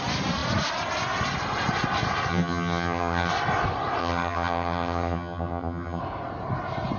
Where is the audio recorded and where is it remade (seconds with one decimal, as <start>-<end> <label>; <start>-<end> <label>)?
0.0-2.3 recorded; 2.3-3.3 remade; 3.3-4.0 recorded; 4.0-6.0 remade; 6.0-7.0 recorded